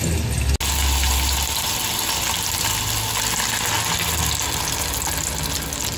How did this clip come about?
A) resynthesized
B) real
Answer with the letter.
B